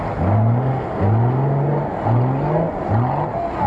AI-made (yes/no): no